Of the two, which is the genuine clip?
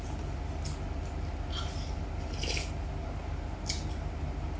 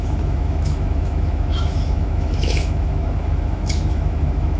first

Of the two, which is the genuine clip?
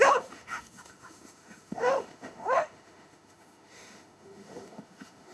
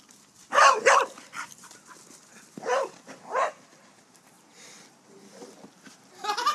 second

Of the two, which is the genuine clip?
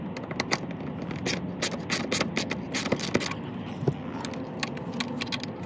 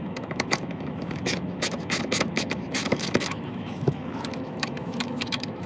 first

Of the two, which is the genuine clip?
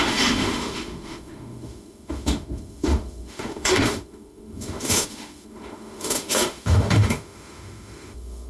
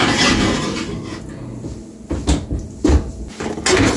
second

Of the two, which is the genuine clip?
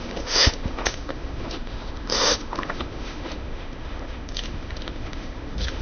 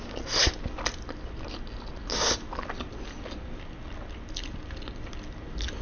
second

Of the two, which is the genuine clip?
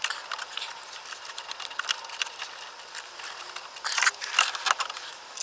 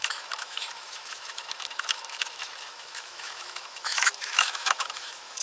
first